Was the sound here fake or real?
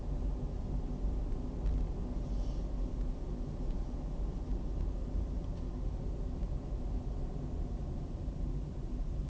real